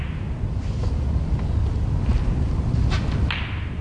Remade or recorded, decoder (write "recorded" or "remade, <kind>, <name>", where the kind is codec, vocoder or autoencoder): recorded